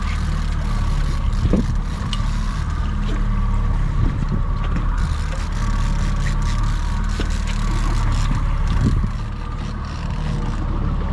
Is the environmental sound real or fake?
real